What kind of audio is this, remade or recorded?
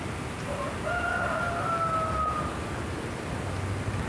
recorded